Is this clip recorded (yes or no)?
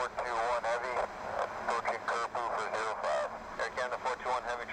yes